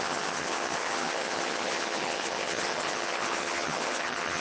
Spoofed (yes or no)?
yes